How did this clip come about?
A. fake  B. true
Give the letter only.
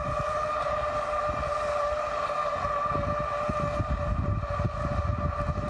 B